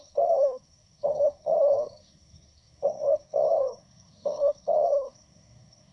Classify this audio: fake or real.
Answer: fake